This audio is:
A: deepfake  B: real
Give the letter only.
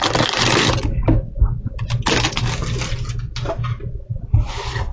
B